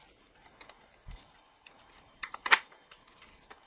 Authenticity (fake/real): fake